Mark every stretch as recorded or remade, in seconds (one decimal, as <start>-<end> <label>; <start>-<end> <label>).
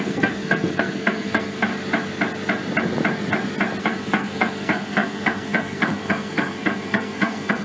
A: 0.0-1.7 remade; 1.7-3.8 recorded; 3.8-7.6 remade